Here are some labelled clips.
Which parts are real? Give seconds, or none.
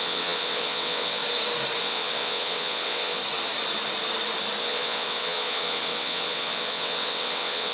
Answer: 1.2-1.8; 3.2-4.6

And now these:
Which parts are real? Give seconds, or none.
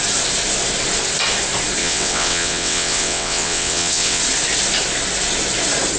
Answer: 0.0-1.8; 4.2-6.0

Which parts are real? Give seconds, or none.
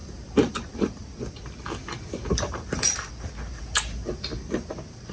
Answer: 0.0-5.1